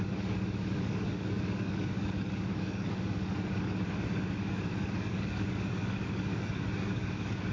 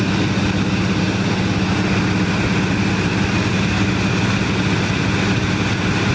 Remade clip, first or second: first